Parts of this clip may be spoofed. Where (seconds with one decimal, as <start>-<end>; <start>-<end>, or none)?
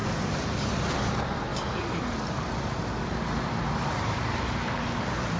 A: none